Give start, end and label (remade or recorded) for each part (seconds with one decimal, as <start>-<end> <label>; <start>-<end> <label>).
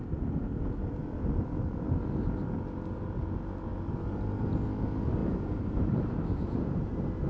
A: 0.0-5.2 recorded; 5.2-7.3 remade